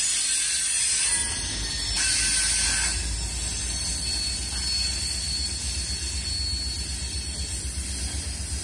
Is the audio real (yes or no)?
yes